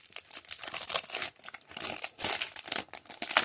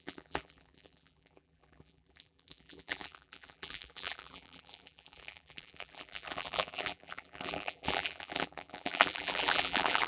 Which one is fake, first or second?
second